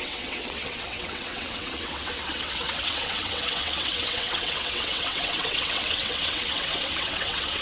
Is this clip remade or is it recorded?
remade